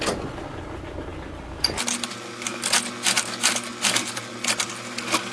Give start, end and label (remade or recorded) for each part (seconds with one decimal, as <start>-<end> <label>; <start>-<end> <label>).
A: 0.0-5.3 recorded